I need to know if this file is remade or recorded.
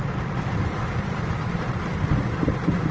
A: recorded